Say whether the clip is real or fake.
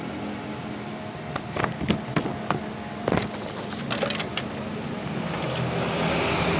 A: real